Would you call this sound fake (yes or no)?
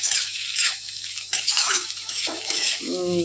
yes